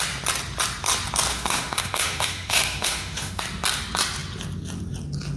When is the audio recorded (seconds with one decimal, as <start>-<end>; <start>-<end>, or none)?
0.0-1.3; 3.4-5.4